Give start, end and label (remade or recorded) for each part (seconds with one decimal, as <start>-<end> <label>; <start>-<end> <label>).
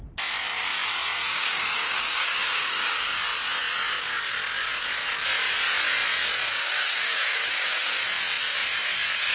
0.0-1.3 recorded; 1.3-3.1 remade; 3.1-6.6 recorded; 6.6-8.0 remade; 8.0-9.3 recorded